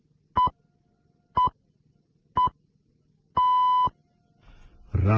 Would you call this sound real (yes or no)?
yes